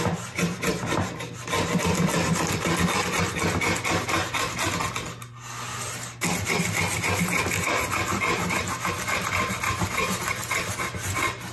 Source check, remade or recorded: recorded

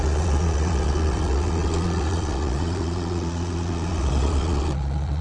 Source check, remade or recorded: remade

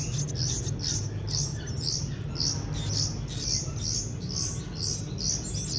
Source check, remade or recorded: recorded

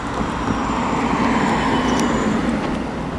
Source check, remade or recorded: recorded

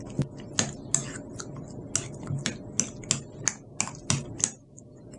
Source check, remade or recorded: recorded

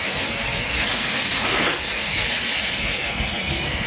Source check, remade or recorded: remade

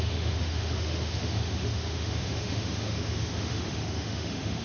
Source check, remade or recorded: remade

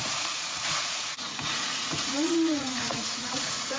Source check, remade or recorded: remade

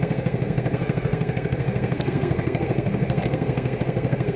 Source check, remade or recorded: remade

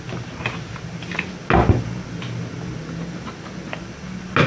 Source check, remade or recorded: recorded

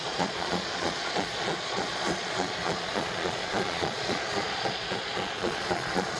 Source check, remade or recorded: remade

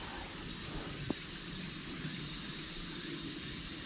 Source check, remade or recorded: recorded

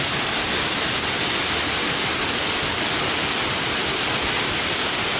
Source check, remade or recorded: recorded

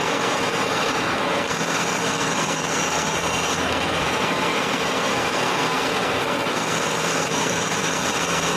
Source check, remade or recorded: remade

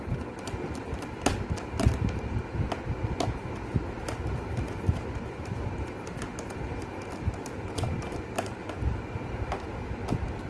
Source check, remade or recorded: recorded